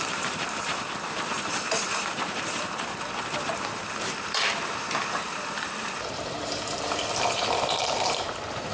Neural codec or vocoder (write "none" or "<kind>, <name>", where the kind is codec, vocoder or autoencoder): vocoder, BigVGAN v2